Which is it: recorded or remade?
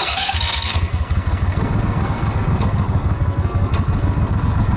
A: remade